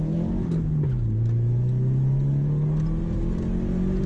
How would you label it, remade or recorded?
recorded